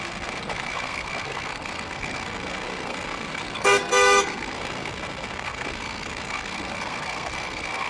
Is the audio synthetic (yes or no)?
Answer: yes